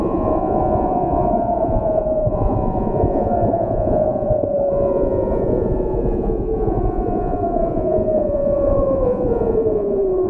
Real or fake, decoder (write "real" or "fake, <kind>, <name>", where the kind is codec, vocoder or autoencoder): fake, vocoder, Vocos